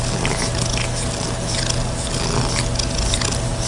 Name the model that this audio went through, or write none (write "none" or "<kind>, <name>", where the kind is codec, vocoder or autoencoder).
none